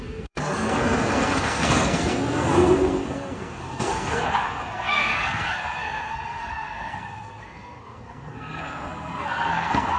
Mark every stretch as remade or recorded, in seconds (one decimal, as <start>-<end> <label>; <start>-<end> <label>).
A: 0.0-10.0 remade